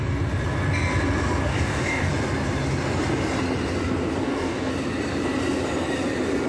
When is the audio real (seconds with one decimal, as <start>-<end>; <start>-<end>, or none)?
0.0-1.5; 2.1-4.2; 4.7-6.5